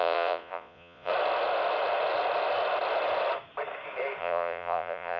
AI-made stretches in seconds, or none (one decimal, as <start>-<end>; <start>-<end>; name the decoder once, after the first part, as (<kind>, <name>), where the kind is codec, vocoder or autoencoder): 0.0-1.1 (vocoder, Vocos); 4.2-5.2